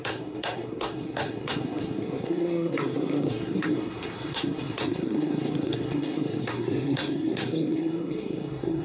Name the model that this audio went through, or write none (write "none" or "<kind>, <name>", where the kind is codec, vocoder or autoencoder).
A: codec, SNAC